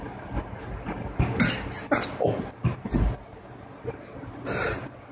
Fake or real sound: real